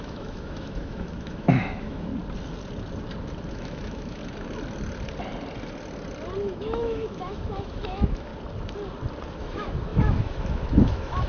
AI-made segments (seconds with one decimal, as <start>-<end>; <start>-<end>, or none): 0.0-2.1; 3.5-4.2; 6.4-8.3; 9.4-11.3